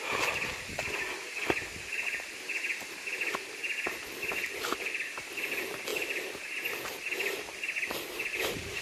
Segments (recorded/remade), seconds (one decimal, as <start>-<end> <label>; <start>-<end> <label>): 0.0-8.8 recorded